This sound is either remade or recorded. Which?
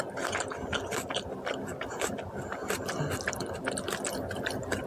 recorded